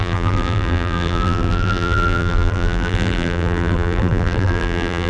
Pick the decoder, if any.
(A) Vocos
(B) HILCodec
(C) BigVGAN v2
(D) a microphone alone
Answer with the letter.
C